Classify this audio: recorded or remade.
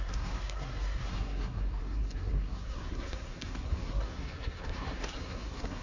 remade